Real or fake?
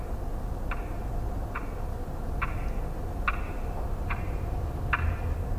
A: real